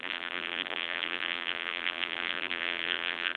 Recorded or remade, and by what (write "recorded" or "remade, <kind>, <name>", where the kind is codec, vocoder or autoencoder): remade, vocoder, BigVGAN v2